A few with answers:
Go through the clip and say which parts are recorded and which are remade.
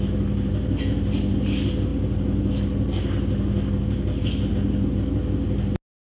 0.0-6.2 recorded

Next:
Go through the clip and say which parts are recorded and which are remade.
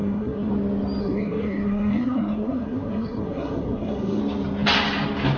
0.0-0.5 remade; 0.5-1.0 recorded; 1.0-4.2 remade; 4.2-5.4 recorded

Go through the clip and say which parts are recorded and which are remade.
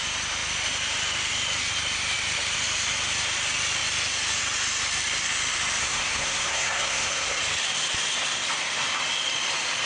0.0-5.8 recorded; 5.8-7.4 remade; 7.4-9.9 recorded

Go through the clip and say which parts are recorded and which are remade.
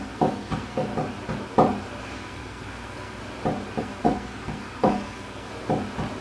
0.0-0.9 remade; 0.9-2.0 recorded; 2.0-3.2 remade; 3.2-3.8 recorded; 3.8-5.5 remade; 5.5-6.2 recorded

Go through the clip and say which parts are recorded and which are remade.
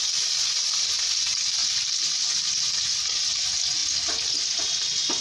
0.0-5.2 recorded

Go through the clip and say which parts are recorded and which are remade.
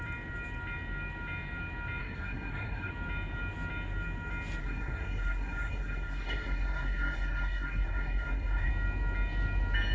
0.0-2.0 recorded; 2.0-2.9 remade; 2.9-4.6 recorded; 4.6-8.7 remade; 8.7-9.9 recorded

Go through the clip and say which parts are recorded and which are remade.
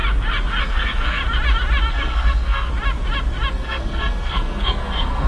0.0-0.6 recorded; 0.6-1.2 remade; 1.2-1.9 recorded; 1.9-2.7 remade; 2.7-3.5 recorded; 3.5-5.3 remade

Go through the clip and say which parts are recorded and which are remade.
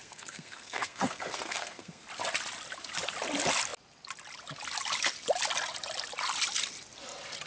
0.0-2.0 remade; 2.0-7.5 recorded